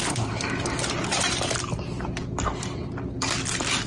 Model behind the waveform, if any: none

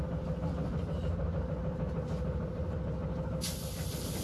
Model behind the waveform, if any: none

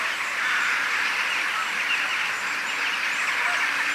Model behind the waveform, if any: none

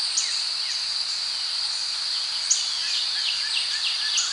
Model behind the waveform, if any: none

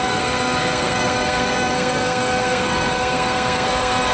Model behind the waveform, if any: codec, SNAC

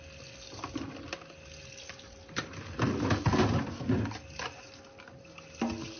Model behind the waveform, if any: none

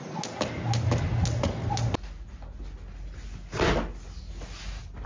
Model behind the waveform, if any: none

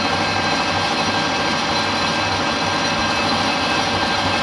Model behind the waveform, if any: none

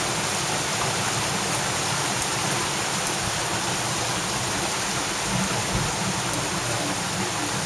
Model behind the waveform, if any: none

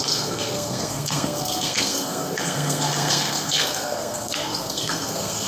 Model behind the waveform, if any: codec, SNAC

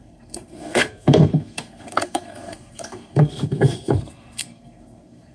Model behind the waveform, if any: codec, SNAC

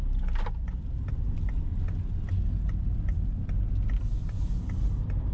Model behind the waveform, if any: none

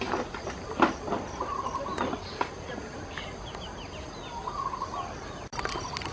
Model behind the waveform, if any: none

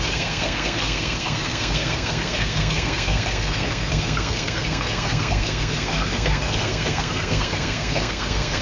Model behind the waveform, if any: codec, SNAC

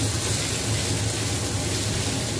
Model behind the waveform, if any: none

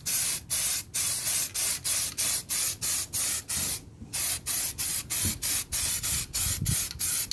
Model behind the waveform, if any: none